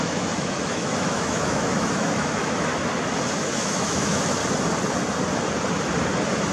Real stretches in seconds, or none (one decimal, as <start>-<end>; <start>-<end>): 2.7-3.4; 4.4-6.5